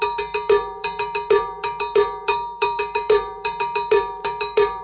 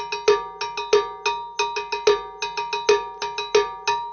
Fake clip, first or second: first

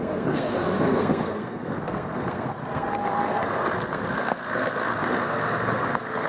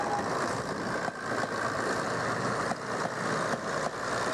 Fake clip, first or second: first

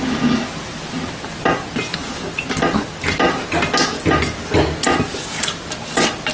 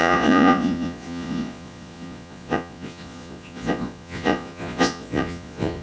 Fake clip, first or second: second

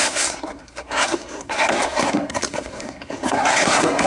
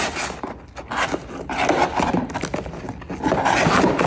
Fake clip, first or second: first